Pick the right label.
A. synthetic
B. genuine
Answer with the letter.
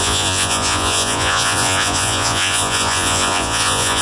A